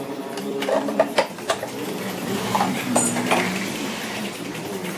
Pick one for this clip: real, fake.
fake